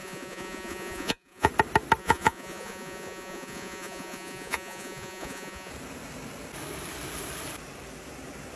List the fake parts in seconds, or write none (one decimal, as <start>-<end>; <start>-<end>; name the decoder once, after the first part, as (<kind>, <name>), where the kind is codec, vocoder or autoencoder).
0.0-1.5 (vocoder, Vocos); 2.0-5.7